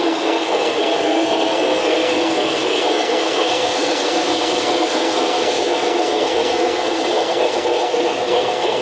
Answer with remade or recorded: remade